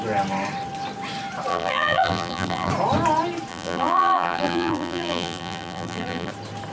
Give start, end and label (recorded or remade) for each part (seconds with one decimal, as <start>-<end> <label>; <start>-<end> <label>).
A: 0.0-1.5 recorded; 1.5-2.7 remade; 2.7-3.5 recorded; 3.5-6.3 remade; 6.3-6.7 recorded